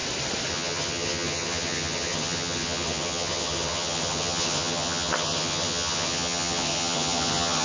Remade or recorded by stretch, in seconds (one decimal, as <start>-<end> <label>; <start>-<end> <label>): 0.0-0.5 recorded; 0.5-7.6 remade